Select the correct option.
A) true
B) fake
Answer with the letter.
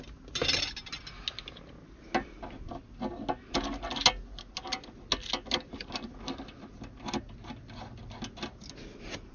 A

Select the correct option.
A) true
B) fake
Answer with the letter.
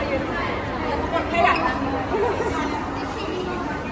A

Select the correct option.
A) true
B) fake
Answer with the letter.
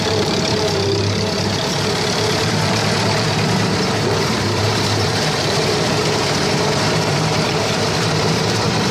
B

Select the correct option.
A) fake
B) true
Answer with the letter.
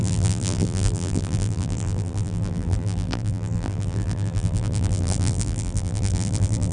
A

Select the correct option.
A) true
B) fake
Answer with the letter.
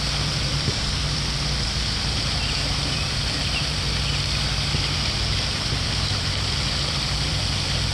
B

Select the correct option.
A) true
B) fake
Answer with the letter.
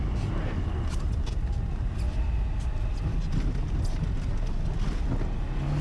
A